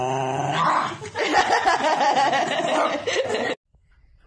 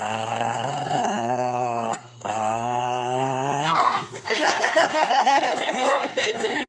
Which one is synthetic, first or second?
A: second